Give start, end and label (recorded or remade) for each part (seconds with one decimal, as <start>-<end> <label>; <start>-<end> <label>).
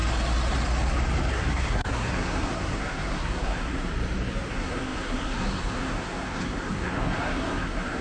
0.0-1.3 recorded; 1.3-3.9 remade; 3.9-4.5 recorded; 4.5-8.0 remade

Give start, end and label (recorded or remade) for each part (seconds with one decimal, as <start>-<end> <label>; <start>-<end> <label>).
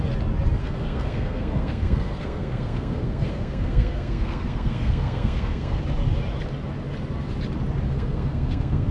0.0-0.6 recorded; 0.6-5.8 remade; 5.8-7.9 recorded; 7.9-8.9 remade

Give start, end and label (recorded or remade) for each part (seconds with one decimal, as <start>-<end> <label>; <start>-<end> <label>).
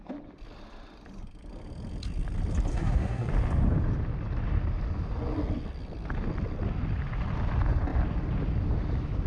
0.0-2.7 recorded; 2.7-3.3 remade; 3.3-9.3 recorded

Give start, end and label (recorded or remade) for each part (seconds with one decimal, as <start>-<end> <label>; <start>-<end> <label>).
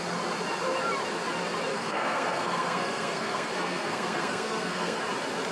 0.0-1.7 recorded; 1.7-5.0 remade; 5.0-5.5 recorded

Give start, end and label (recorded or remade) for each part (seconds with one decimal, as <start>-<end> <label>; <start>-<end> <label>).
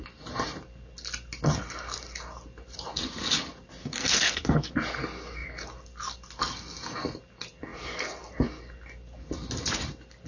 0.0-3.8 recorded; 3.8-4.7 remade; 4.7-10.3 recorded